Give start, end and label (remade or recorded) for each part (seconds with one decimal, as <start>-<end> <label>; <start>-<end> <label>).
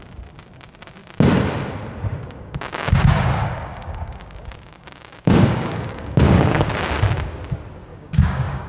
0.0-2.1 recorded; 2.1-6.7 remade; 6.7-7.9 recorded; 7.9-8.7 remade